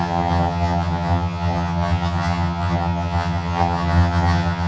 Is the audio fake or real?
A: fake